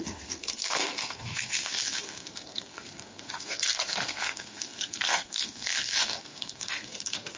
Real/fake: fake